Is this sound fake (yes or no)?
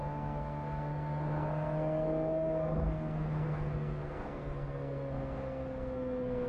yes